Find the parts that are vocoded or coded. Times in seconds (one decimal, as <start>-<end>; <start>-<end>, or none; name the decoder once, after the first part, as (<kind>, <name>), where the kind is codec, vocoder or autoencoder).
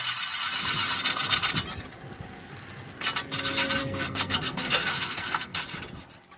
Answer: 3.8-5.6 (codec, SNAC)